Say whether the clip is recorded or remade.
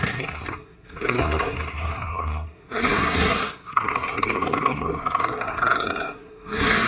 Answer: remade